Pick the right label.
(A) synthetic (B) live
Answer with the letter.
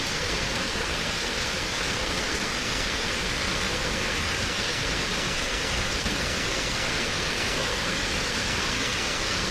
A